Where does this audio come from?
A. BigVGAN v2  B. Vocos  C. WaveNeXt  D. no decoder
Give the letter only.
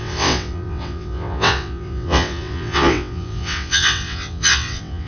C